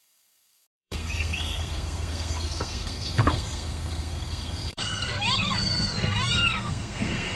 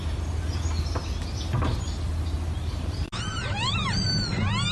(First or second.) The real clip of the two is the second